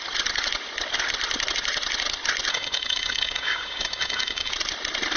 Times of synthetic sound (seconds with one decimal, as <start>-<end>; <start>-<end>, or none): 2.5-4.5